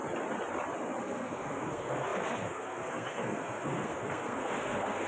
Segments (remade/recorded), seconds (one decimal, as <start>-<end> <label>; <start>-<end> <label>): 0.0-1.0 recorded; 1.0-5.1 remade